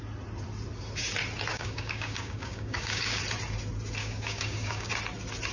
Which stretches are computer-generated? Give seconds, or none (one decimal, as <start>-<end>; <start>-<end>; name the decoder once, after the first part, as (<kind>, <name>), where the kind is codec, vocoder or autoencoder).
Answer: 1.5-3.2 (codec, DAC); 4.0-4.9